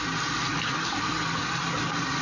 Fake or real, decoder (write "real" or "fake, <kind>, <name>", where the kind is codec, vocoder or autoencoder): real